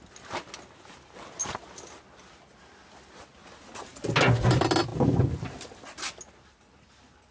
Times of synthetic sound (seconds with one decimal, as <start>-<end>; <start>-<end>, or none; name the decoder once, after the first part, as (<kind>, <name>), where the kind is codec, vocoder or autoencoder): none